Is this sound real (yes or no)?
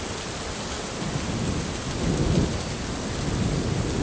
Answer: yes